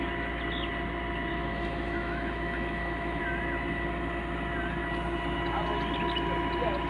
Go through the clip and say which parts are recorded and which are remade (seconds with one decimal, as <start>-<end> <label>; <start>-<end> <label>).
0.0-1.3 recorded; 1.3-3.2 remade; 3.2-6.9 recorded